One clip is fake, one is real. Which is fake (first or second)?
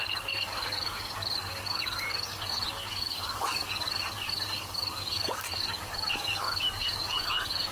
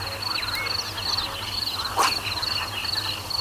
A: first